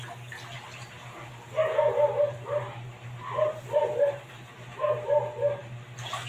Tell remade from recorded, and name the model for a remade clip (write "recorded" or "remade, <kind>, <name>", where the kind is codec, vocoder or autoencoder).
recorded